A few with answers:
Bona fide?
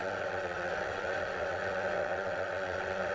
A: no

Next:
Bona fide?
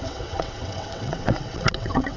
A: no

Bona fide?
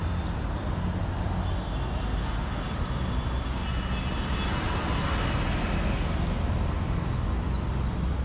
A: yes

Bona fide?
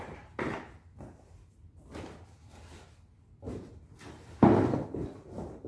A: yes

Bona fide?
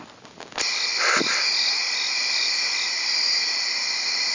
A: yes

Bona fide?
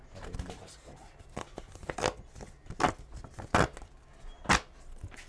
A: yes